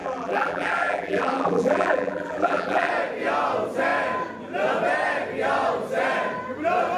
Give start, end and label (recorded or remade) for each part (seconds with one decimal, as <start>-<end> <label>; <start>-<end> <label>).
0.0-2.9 remade; 2.9-7.0 recorded